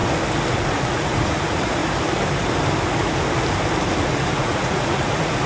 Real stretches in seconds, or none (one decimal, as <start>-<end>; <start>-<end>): 0.0-0.6; 1.8-4.0